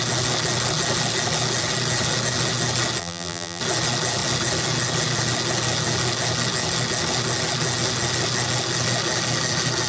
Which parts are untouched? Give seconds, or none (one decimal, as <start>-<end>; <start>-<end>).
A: 0.0-3.0; 3.6-9.9